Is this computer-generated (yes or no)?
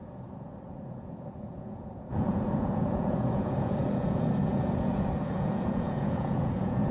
yes